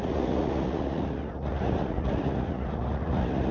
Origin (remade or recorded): remade